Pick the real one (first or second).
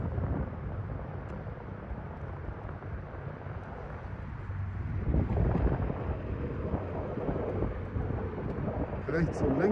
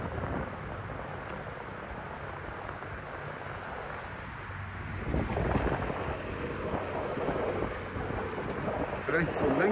second